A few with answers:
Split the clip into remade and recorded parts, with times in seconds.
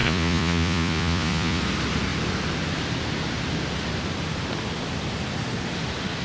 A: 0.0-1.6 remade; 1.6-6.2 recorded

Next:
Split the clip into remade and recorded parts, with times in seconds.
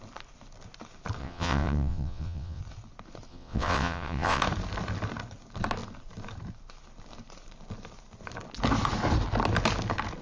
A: 0.0-1.2 recorded; 1.2-2.6 remade; 2.6-3.3 recorded; 3.3-4.4 remade; 4.4-10.2 recorded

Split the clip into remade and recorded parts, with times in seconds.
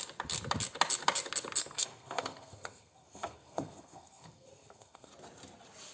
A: 0.0-1.6 recorded; 1.6-5.1 remade; 5.1-5.9 recorded